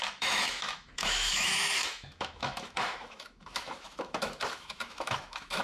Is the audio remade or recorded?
remade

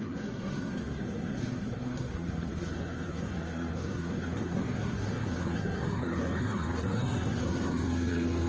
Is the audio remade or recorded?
remade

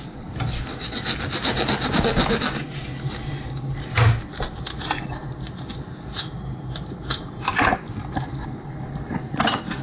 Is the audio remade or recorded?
recorded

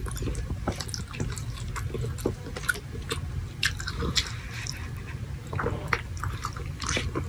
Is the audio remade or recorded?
recorded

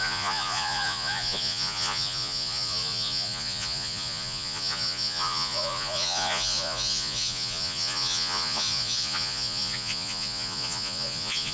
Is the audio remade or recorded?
remade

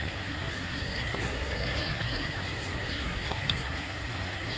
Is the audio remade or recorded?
remade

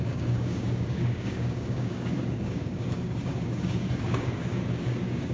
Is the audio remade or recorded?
remade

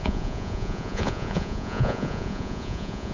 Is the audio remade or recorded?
remade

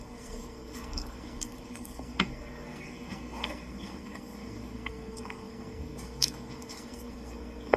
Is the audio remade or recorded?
remade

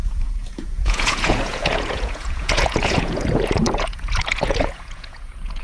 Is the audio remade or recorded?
remade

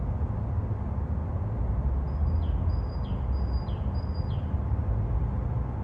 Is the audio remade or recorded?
recorded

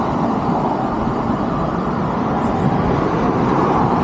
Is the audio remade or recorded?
remade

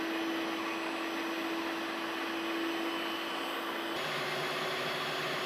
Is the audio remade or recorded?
recorded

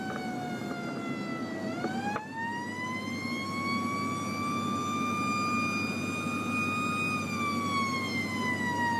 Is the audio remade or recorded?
recorded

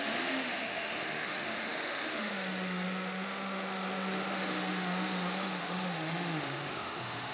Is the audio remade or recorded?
remade